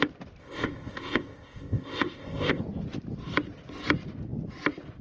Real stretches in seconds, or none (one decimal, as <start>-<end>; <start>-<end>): 0.0-0.4; 2.6-5.0